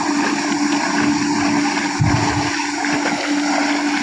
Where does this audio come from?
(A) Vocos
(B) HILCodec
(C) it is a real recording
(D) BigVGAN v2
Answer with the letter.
C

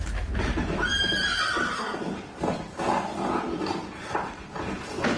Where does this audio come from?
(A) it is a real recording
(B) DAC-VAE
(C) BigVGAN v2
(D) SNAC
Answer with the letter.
A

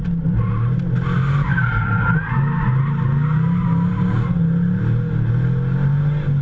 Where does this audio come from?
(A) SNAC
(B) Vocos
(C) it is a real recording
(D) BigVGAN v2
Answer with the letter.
C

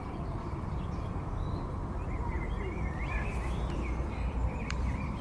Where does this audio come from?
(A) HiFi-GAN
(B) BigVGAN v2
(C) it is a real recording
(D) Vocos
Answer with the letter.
B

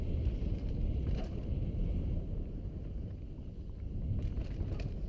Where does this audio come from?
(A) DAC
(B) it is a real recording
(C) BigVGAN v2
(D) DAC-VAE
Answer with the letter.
C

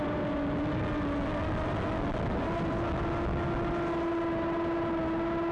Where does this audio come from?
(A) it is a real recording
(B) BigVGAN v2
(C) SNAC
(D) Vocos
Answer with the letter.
A